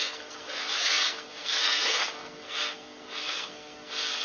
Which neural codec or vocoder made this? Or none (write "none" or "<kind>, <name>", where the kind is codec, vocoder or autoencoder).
codec, SNAC